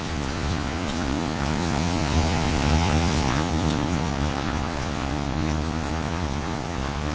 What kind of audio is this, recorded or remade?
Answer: remade